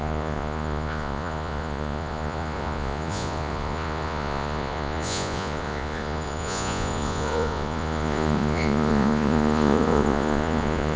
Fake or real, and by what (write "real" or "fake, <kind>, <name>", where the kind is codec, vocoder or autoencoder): fake, vocoder, Vocos